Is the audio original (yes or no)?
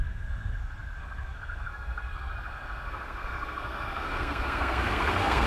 no